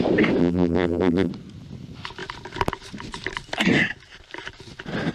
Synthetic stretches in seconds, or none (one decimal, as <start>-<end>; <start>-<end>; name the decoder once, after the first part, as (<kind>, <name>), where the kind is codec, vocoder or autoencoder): 0.4-1.3 (vocoder, BigVGAN v2)